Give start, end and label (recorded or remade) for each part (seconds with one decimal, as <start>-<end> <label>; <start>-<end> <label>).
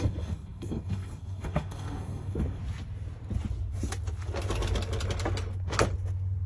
0.0-2.6 remade; 2.6-6.5 recorded